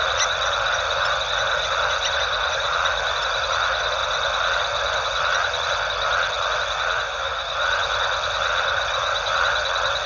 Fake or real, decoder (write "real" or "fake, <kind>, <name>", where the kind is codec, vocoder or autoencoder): real